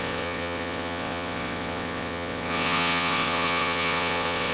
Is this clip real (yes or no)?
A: no